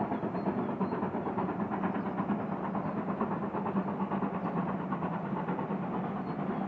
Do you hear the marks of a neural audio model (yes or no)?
no